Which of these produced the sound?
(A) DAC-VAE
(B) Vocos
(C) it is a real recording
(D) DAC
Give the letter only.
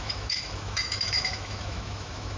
A